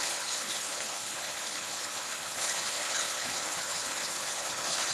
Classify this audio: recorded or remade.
remade